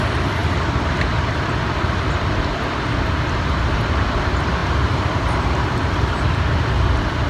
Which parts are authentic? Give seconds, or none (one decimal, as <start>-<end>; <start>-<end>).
0.0-4.6; 6.6-7.3